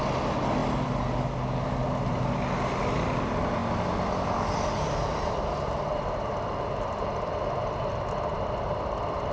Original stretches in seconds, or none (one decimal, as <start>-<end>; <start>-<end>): 0.0-9.3